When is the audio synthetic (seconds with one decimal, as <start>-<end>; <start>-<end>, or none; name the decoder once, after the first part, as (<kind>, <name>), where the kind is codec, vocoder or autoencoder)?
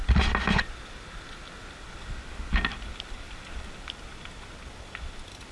none